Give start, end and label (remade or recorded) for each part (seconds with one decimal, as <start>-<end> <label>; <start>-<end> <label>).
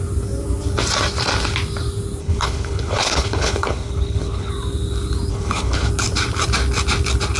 0.0-2.2 recorded; 2.2-4.5 remade; 4.5-5.3 recorded; 5.3-5.9 remade; 5.9-7.4 recorded